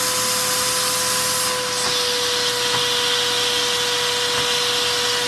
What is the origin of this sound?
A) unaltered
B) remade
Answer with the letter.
A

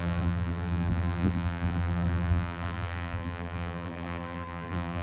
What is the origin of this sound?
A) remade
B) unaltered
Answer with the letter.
A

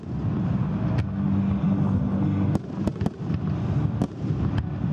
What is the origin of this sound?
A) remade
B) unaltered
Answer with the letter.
B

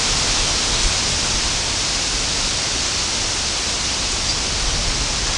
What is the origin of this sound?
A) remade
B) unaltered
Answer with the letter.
B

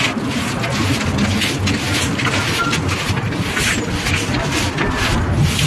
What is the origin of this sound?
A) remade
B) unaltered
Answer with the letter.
B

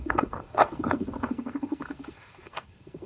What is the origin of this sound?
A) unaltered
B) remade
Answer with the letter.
B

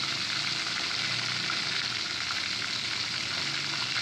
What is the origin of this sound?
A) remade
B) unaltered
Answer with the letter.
B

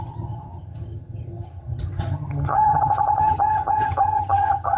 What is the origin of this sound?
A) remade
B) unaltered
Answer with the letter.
A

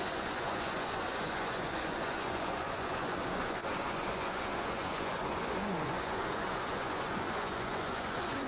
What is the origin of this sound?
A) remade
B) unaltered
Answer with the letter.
A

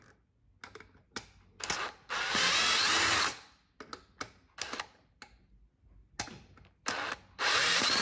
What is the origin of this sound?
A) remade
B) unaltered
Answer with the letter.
B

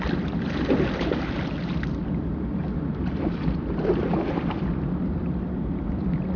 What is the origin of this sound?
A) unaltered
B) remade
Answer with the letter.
A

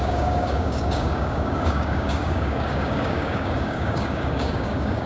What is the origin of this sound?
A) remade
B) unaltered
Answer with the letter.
A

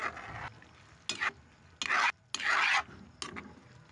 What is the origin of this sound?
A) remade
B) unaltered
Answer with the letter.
B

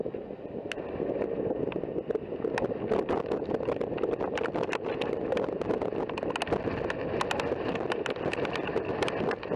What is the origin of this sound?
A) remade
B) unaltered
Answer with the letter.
B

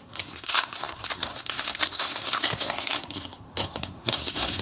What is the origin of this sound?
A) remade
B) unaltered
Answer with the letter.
A